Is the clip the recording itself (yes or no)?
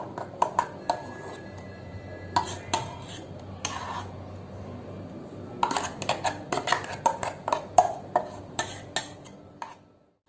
yes